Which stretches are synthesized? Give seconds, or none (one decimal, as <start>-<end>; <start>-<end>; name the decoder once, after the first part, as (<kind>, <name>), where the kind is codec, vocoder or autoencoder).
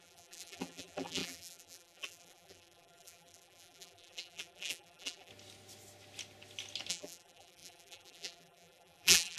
0.0-5.3 (vocoder, BigVGAN v2); 6.9-9.4